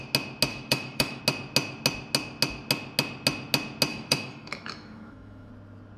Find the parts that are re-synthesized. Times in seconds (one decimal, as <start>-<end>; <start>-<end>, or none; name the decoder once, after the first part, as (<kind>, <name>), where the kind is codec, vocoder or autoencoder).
0.5-1.2 (autoencoder, DAC-VAE); 3.9-5.5